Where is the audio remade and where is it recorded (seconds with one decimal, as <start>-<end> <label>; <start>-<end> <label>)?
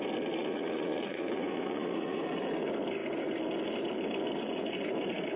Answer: 0.0-0.4 recorded; 0.4-2.2 remade; 2.2-5.4 recorded